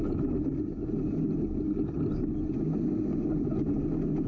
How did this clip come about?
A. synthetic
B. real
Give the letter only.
B